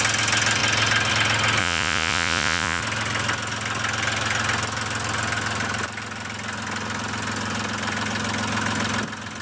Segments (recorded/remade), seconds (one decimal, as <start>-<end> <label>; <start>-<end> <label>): 0.0-1.6 recorded; 1.6-2.8 remade; 2.8-9.4 recorded